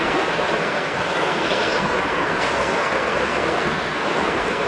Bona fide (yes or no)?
no